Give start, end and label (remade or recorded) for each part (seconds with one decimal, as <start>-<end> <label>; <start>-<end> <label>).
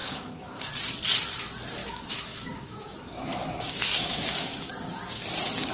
0.0-0.7 remade; 0.7-1.8 recorded; 1.8-4.7 remade; 4.7-5.7 recorded